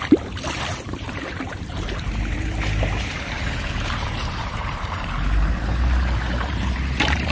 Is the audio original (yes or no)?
no